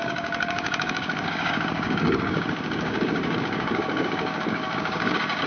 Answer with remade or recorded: remade